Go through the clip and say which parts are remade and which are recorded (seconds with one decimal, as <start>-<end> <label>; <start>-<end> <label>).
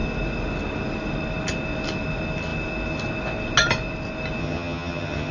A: 0.0-4.4 recorded; 4.4-5.3 remade